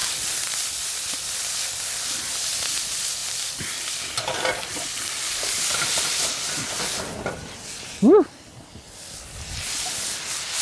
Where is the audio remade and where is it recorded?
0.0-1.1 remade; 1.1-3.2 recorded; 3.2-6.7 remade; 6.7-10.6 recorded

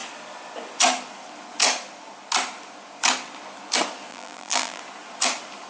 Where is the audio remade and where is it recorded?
0.0-4.1 recorded; 4.1-4.8 remade; 4.8-5.7 recorded

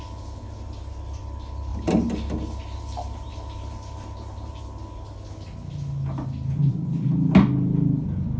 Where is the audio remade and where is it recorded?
0.0-1.7 recorded; 1.7-4.6 remade; 4.6-6.7 recorded; 6.7-7.3 remade; 7.3-8.4 recorded

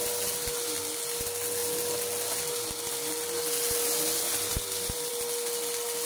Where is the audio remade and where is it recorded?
0.0-4.5 recorded; 4.5-5.1 remade; 5.1-6.1 recorded

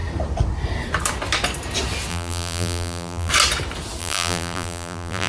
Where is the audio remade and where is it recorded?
0.0-2.1 recorded; 2.1-3.3 remade; 3.3-4.0 recorded; 4.0-5.3 remade

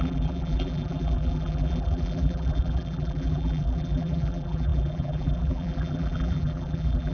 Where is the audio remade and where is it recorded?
0.0-7.1 remade